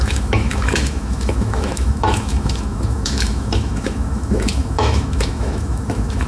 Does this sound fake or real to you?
fake